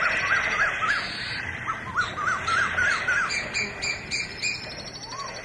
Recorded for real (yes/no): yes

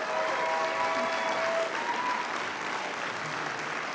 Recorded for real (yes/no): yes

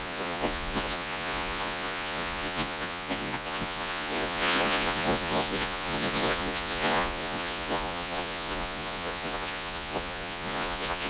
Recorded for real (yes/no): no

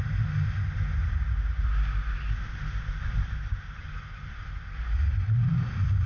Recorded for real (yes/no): yes